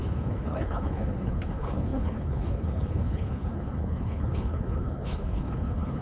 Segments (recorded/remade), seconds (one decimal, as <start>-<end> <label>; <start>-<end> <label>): 0.0-6.0 remade